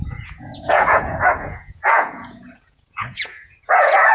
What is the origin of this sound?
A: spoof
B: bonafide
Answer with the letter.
A